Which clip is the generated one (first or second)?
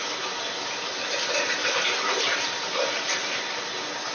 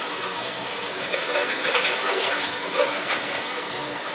second